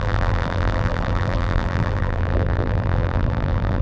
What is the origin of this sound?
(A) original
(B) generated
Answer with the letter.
B